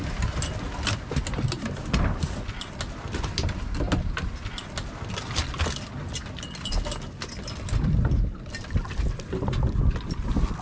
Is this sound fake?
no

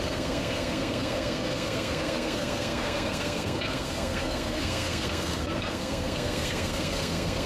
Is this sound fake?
yes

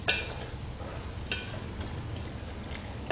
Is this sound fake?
no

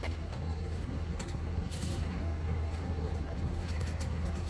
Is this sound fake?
yes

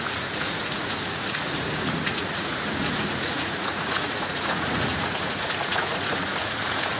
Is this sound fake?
yes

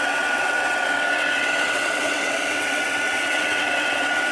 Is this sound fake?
yes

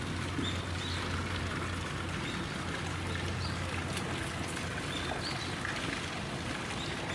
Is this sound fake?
no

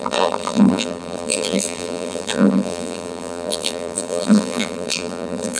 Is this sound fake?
yes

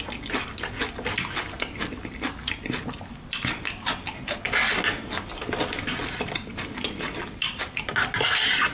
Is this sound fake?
no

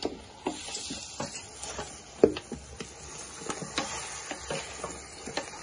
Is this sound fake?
no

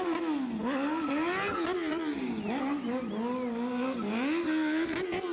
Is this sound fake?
no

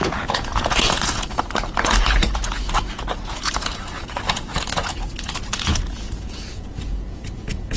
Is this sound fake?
yes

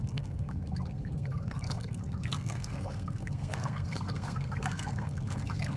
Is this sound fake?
yes